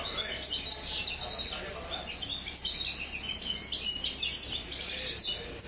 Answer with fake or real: real